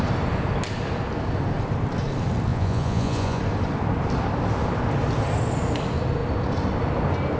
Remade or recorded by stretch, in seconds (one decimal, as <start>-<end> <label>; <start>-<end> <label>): 0.0-2.5 recorded; 2.5-3.4 remade; 3.4-7.4 recorded